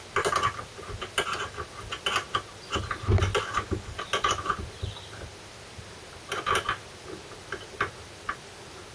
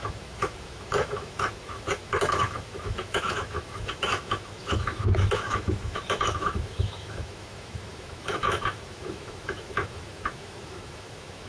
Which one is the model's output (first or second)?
second